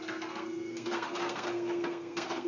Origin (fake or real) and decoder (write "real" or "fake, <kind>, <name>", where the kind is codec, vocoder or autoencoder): fake, codec, SNAC